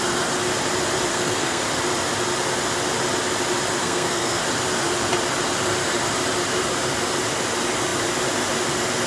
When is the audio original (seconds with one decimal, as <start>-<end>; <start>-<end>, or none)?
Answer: 0.0-1.1; 1.6-3.8; 4.4-9.1